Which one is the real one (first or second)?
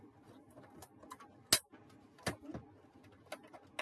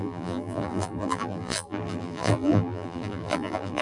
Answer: first